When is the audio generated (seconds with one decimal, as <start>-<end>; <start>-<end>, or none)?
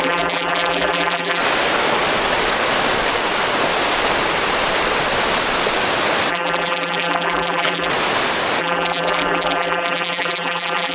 0.0-1.4; 6.3-7.9; 8.6-10.9